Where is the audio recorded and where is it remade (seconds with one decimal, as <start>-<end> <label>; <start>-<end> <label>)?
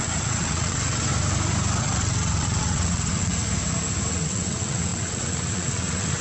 0.0-1.1 remade; 1.1-1.8 recorded; 1.8-3.3 remade; 3.3-4.1 recorded; 4.1-6.2 remade